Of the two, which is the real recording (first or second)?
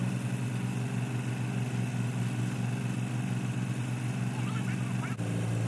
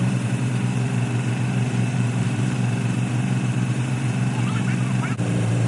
first